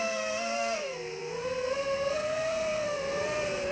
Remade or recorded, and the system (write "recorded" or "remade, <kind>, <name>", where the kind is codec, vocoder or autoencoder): remade, codec, SNAC